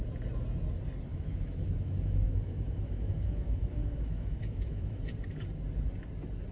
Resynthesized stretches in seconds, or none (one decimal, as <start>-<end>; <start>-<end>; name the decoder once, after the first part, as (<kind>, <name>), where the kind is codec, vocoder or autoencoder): 1.1-5.0 (autoencoder, DAC-VAE)